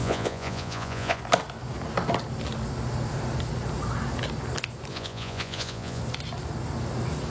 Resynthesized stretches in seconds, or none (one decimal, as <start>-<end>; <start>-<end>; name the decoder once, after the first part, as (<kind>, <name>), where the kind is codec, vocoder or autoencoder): 0.0-1.2 (vocoder, Vocos); 4.9-6.0